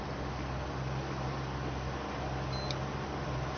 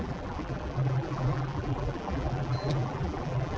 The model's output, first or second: second